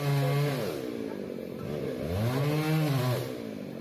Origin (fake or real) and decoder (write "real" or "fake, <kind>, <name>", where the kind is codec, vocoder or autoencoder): real